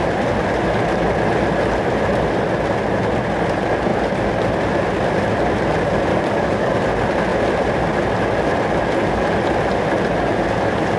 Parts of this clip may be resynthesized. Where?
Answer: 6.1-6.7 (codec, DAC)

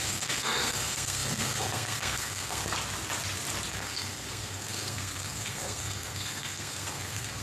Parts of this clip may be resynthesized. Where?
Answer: 0.0-2.6 (codec, SNAC); 3.7-7.4

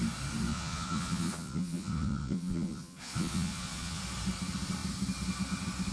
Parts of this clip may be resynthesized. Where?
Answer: 0.5-4.0 (vocoder, Vocos)

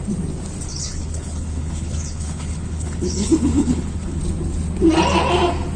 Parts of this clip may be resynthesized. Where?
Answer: 0.7-4.2 (codec, HILCodec)

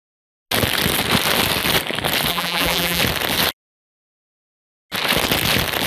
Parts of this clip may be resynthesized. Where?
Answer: 2.3-3.0 (vocoder, BigVGAN v2)

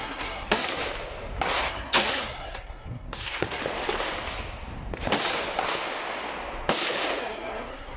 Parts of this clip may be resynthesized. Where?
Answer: 0.0-0.8 (codec, SNAC); 1.7-3.6; 7.2-8.0

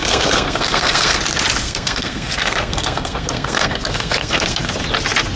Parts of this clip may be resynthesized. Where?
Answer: 0.0-1.2 (codec, SNAC); 1.6-4.7